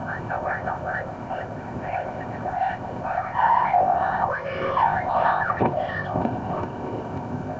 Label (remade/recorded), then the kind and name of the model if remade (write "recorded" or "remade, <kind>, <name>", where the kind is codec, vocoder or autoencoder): remade, codec, ZipCodec